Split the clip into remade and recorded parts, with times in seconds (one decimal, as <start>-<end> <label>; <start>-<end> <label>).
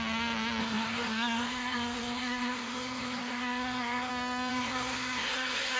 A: 0.0-0.6 recorded; 0.6-4.1 remade; 4.1-4.5 recorded; 4.5-5.8 remade